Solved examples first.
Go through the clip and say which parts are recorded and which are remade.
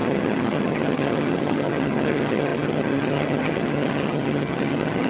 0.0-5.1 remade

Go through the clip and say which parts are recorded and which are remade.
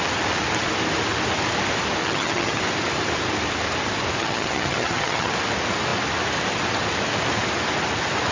0.0-2.0 recorded; 2.0-2.6 remade; 2.6-4.2 recorded; 4.2-5.3 remade; 5.3-8.3 recorded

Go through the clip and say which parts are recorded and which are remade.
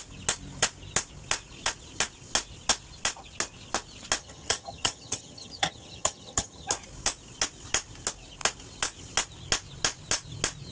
0.0-4.2 recorded; 4.2-6.7 remade; 6.7-10.7 recorded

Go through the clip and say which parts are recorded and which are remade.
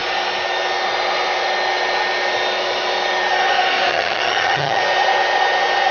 0.0-3.9 recorded; 3.9-4.8 remade; 4.8-5.9 recorded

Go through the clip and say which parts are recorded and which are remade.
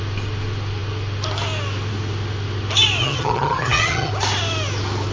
0.0-3.0 recorded; 3.0-4.1 remade; 4.1-5.1 recorded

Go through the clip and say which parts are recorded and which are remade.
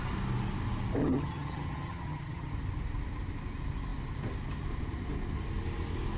0.0-1.0 recorded; 1.0-2.5 remade; 2.5-6.2 recorded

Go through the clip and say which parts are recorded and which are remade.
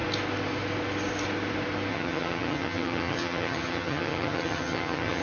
0.0-1.9 recorded; 1.9-5.2 remade